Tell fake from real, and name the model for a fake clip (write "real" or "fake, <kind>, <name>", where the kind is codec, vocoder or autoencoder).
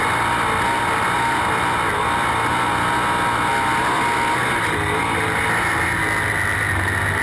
real